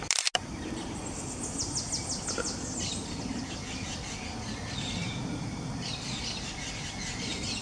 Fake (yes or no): no